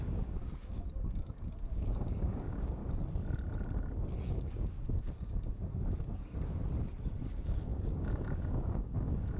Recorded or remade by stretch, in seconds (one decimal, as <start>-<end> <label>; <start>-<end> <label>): 0.0-2.8 remade; 2.8-4.3 recorded; 4.3-6.6 remade; 6.6-7.3 recorded; 7.3-9.4 remade